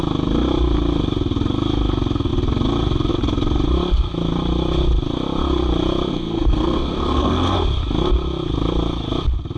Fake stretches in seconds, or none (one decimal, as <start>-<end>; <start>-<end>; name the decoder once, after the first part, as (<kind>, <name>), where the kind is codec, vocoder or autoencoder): 6.1-7.6 (codec, SNAC)